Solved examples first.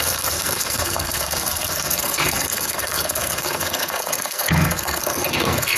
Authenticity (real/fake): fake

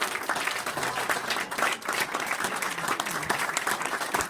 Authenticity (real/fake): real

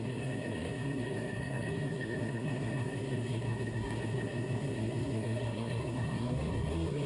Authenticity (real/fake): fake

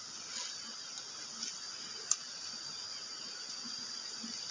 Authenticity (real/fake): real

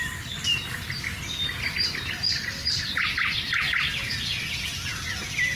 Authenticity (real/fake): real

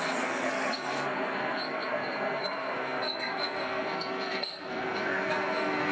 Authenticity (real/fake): fake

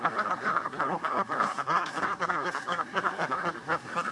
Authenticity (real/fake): fake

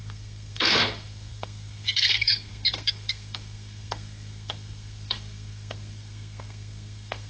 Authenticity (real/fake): fake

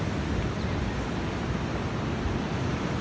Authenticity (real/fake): real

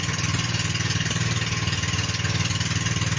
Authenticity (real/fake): real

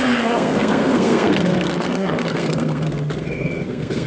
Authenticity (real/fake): fake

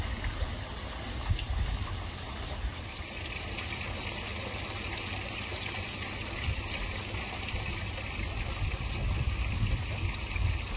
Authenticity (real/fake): real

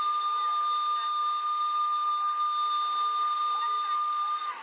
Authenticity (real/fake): real